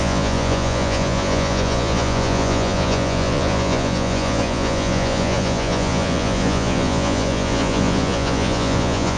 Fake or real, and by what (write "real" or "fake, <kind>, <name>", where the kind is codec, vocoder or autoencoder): fake, vocoder, Vocos